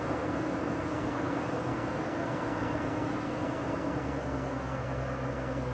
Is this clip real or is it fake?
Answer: fake